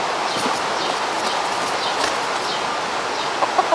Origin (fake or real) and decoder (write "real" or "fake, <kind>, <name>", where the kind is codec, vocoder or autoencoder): real